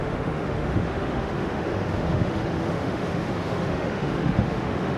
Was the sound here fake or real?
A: fake